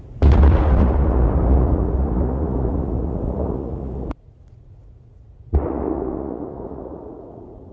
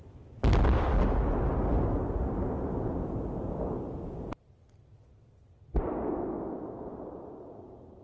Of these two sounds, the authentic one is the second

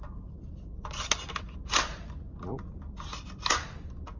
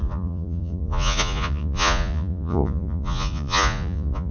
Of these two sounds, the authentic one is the first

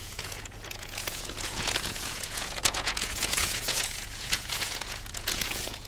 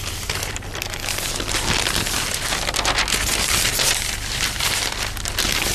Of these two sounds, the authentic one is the second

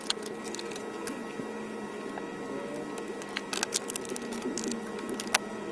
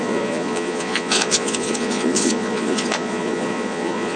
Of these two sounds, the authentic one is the first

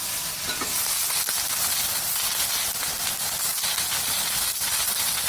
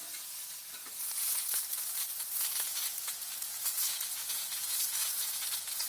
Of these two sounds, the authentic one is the first